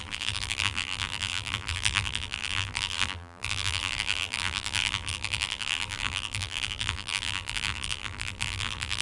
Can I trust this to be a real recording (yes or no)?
no